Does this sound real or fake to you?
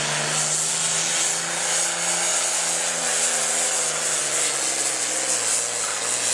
real